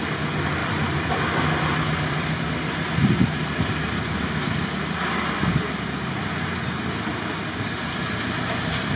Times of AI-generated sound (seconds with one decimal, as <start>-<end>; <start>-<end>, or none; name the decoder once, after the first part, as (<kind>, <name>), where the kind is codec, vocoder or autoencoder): 0.6-2.4 (vocoder, BigVGAN v2)